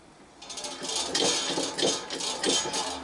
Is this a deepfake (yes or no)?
no